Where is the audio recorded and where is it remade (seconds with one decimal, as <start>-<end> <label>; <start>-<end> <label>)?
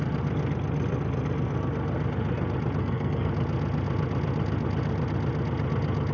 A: 0.0-2.8 recorded; 2.8-3.3 remade; 3.3-6.1 recorded